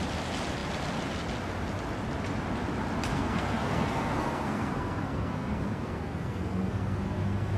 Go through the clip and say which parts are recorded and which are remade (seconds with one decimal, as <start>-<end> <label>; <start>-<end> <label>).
0.0-3.1 recorded; 3.1-7.6 remade